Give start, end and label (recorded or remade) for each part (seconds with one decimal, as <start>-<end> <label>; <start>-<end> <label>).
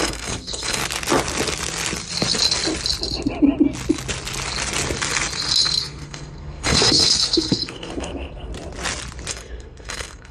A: 0.0-0.8 remade; 0.8-5.8 recorded; 5.8-8.5 remade; 8.5-9.3 recorded; 9.3-10.3 remade